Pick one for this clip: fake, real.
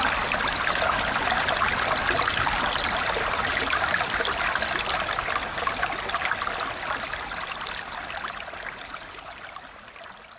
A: real